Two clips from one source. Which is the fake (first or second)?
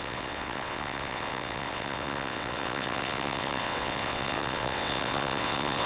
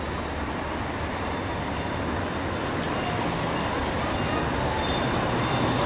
first